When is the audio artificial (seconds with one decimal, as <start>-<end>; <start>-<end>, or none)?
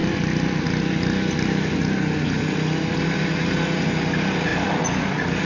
none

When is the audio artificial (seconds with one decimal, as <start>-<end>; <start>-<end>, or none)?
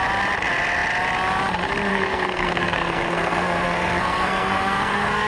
1.9-5.3